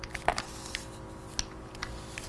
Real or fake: real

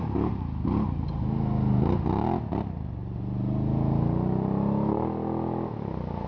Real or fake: real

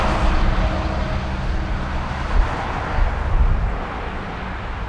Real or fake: real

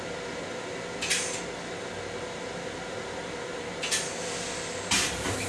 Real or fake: real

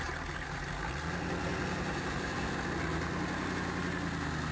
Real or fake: real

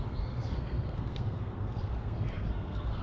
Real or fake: fake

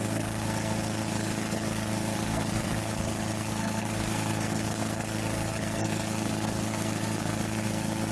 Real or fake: fake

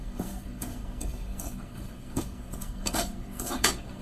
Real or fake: fake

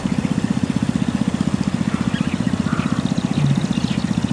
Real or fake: real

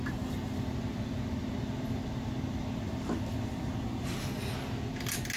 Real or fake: real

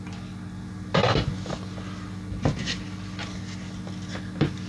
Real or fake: real